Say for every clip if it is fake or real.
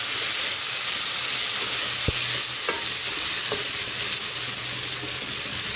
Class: real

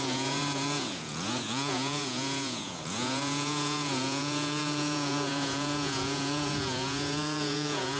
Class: fake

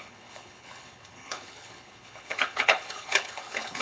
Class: fake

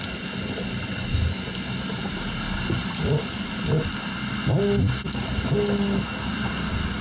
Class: real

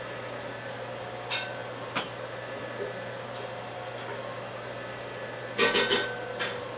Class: real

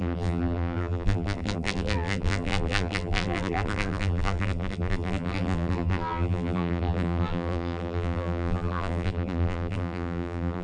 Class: fake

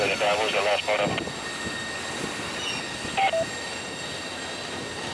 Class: real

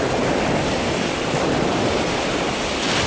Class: real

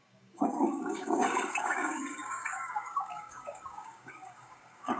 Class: fake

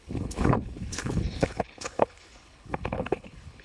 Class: fake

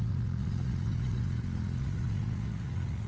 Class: fake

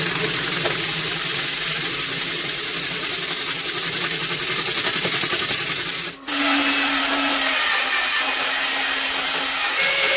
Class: real